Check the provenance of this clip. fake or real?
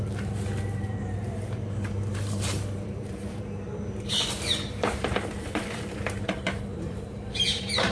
fake